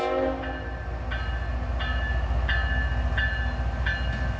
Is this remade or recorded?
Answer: recorded